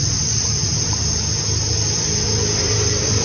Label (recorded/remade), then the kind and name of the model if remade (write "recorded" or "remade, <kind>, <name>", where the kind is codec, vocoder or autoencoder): remade, vocoder, BigVGAN v2